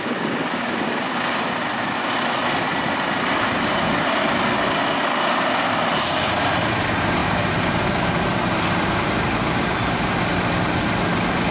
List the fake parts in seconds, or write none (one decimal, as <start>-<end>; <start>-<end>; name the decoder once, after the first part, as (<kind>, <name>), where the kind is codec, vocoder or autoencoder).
2.7-4.0 (vocoder, BigVGAN v2); 7.2-10.2